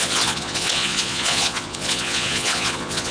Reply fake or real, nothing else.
fake